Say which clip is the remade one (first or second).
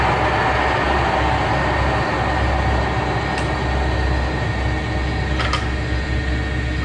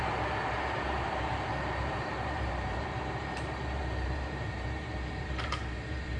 second